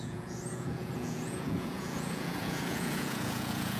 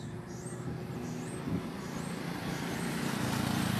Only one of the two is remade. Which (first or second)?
first